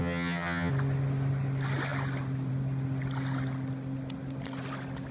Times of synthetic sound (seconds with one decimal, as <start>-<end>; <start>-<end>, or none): 0.0-0.7